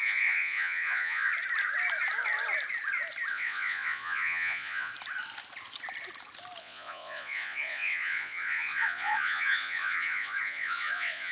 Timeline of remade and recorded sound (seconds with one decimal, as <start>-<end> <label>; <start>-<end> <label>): 0.0-1.3 remade; 1.3-3.3 recorded; 3.3-4.9 remade; 4.9-6.6 recorded; 6.6-11.3 remade